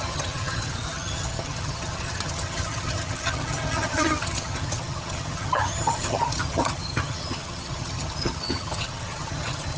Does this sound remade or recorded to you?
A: remade